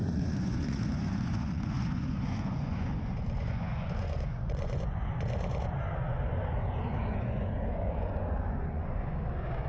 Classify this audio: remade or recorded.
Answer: remade